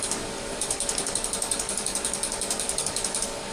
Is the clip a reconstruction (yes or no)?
yes